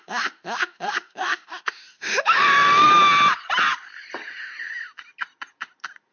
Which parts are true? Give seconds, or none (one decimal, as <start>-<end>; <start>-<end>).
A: 2.9-6.1